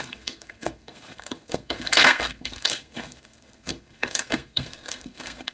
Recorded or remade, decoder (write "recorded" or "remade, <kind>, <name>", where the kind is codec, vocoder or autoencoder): remade, codec, SNAC